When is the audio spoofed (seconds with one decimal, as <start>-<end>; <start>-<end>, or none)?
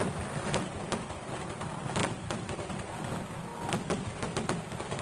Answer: 2.0-2.7